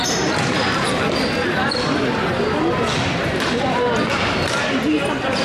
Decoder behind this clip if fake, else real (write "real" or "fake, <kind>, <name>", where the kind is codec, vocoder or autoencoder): real